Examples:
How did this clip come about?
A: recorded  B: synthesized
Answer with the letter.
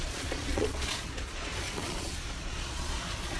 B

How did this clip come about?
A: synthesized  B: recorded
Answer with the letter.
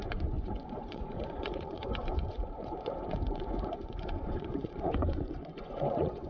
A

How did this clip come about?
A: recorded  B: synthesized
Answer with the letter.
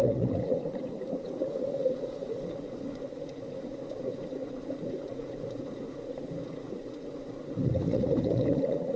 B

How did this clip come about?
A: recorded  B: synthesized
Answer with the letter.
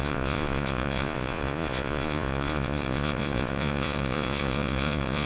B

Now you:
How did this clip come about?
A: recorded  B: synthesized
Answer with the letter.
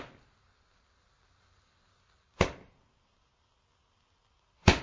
A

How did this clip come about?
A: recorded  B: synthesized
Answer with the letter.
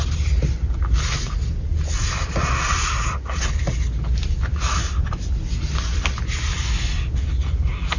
A